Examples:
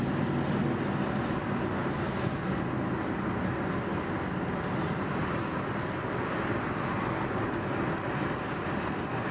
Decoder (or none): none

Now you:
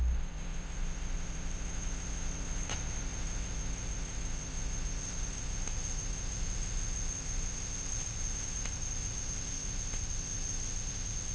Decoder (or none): codec, ZipCodec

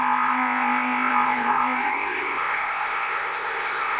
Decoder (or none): codec, ZipCodec